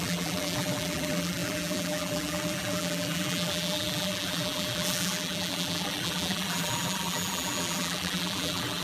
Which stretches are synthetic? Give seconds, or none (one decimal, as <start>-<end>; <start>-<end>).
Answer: 0.0-8.8